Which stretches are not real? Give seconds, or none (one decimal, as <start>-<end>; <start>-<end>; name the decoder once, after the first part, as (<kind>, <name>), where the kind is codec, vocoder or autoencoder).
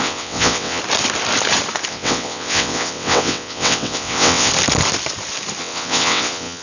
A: 0.0-0.8 (vocoder, WaveNeXt); 1.9-4.5; 5.6-6.6